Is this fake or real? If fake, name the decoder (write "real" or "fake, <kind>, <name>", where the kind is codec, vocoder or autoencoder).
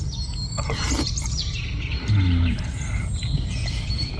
real